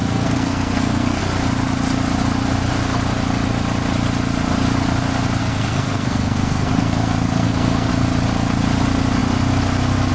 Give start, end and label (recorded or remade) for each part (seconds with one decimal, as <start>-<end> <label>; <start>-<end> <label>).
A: 0.0-1.2 remade; 1.2-5.4 recorded; 5.4-7.9 remade; 7.9-10.1 recorded